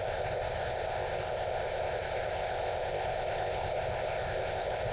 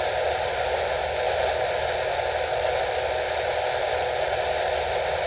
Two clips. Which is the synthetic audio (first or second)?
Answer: first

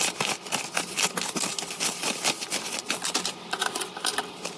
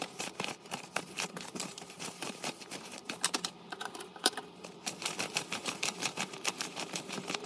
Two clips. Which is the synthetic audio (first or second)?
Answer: second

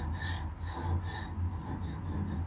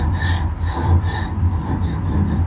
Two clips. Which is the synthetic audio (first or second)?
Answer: second